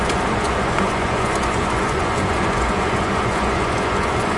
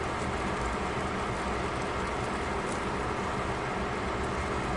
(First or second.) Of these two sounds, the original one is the second